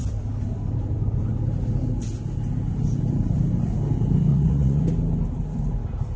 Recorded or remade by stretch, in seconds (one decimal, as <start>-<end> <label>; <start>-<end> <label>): 0.0-4.3 recorded; 4.3-4.8 remade; 4.8-6.2 recorded